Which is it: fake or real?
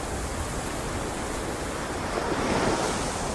real